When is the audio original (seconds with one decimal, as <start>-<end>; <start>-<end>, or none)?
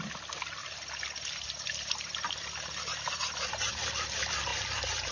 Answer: 0.0-5.1